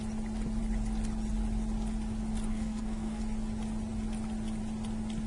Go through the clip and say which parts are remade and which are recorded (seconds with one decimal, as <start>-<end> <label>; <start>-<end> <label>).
0.0-2.5 recorded; 2.5-3.2 remade; 3.2-5.3 recorded